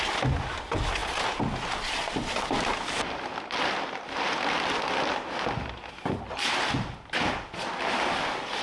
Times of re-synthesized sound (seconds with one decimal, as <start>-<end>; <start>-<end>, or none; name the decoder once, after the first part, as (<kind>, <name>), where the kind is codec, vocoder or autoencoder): none